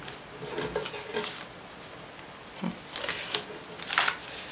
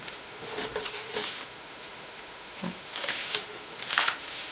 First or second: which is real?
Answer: first